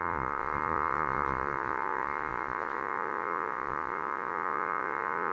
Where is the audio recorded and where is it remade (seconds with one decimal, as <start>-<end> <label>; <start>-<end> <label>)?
0.0-5.3 remade